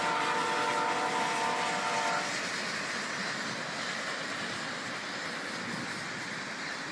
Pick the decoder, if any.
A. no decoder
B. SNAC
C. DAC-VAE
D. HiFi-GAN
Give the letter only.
A